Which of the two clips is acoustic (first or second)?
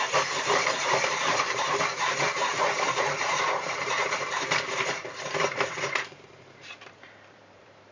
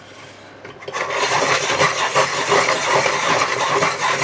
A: second